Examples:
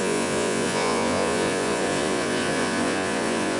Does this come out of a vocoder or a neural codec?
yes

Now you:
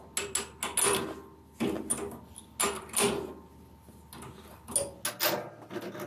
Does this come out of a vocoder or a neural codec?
no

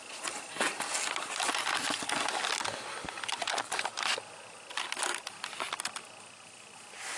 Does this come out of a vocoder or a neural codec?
no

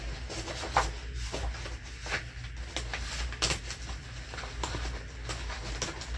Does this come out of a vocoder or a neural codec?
no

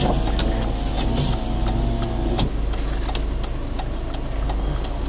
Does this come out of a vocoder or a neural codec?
no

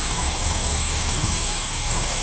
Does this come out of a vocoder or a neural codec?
yes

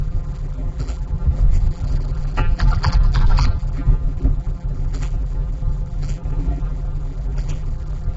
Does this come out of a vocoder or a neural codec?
yes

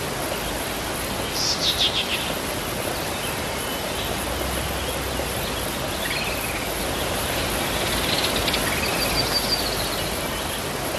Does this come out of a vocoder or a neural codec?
no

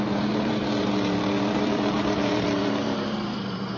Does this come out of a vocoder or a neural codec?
yes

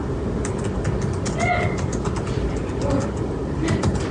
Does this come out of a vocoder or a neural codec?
no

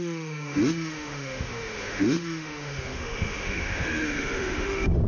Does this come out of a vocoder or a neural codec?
yes